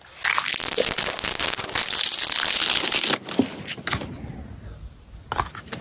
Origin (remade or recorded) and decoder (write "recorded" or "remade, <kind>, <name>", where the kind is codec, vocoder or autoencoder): recorded